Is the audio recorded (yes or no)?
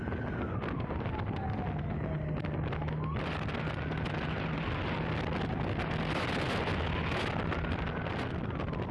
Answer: yes